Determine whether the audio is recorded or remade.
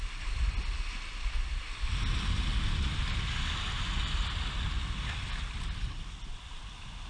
recorded